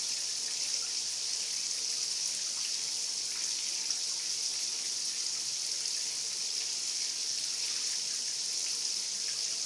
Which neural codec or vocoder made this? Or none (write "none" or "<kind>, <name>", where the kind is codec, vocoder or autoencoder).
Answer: none